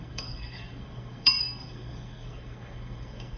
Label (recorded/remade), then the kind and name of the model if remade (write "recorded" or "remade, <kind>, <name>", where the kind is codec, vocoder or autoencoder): remade, codec, SNAC